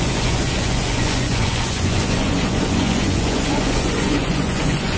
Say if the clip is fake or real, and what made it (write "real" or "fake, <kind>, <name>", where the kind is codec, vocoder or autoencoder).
fake, vocoder, Vocos